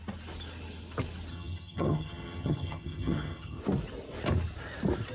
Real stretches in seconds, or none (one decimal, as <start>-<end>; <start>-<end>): 0.0-1.3; 3.6-5.1